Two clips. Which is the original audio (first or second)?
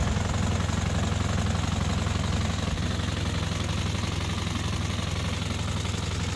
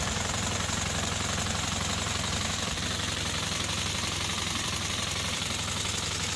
first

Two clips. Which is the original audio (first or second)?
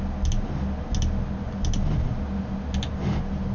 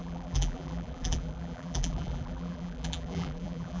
first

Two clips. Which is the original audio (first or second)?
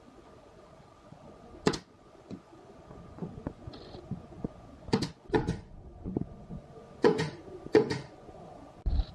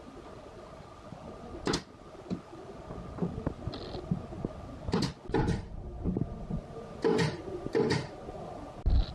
second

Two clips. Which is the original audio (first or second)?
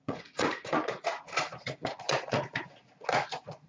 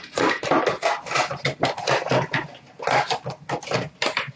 second